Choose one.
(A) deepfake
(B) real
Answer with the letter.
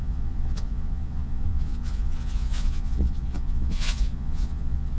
A